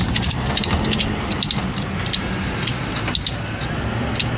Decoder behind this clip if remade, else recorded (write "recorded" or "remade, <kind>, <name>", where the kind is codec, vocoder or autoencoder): recorded